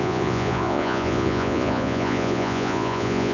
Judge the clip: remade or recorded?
remade